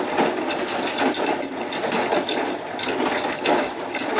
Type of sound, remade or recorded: recorded